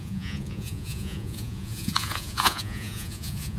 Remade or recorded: remade